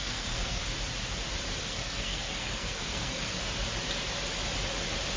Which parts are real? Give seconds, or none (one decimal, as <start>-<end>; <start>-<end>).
0.6-1.6; 3.4-5.2